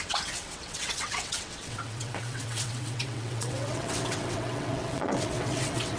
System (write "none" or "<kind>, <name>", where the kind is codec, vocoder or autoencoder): vocoder, WaveNeXt